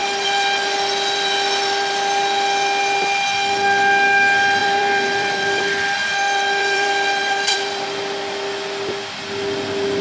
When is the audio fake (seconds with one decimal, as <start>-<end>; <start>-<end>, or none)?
0.0-2.2; 4.6-8.5